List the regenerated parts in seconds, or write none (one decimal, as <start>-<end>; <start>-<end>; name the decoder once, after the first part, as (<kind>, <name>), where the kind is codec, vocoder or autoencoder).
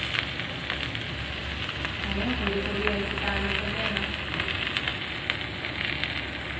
none